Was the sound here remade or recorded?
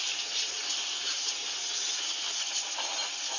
recorded